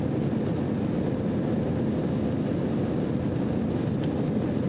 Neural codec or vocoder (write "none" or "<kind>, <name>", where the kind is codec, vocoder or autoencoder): none